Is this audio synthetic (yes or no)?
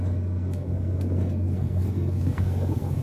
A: yes